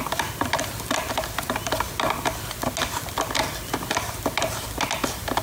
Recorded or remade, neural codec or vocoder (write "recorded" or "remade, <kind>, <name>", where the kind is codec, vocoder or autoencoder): recorded